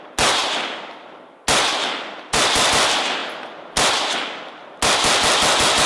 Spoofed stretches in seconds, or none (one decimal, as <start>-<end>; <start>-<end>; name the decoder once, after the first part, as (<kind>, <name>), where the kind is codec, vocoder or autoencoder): none